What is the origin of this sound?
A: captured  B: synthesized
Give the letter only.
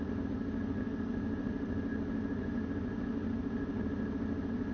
A